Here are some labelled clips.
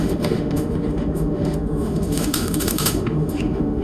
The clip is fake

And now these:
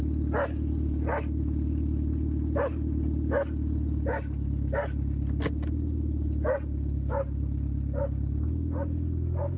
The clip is real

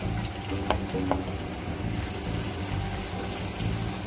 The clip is real